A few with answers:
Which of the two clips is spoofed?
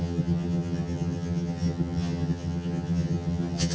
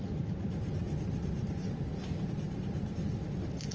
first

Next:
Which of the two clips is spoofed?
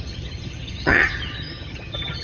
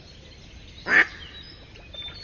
first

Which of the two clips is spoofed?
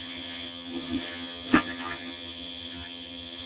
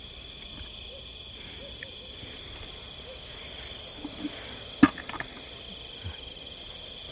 first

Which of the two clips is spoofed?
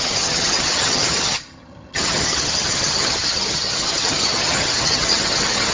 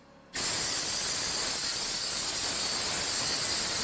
first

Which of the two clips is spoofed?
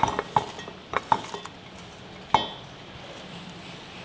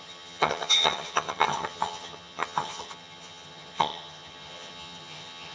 second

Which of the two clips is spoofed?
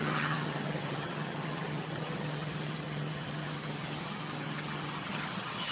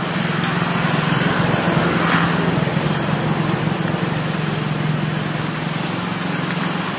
first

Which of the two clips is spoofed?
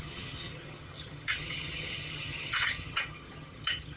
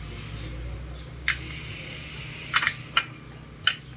first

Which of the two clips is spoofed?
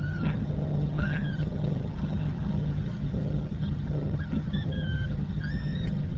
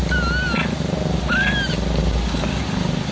first